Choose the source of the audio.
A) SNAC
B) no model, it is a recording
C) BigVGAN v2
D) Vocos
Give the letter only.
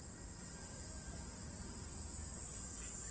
B